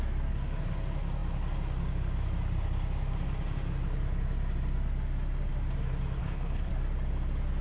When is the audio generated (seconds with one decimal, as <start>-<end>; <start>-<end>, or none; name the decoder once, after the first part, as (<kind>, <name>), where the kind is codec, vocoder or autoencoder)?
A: 6.2-6.7 (codec, HILCodec)